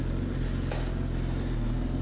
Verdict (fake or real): real